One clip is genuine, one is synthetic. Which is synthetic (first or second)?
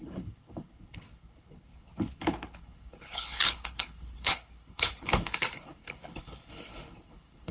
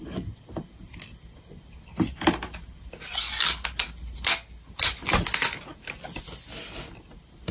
first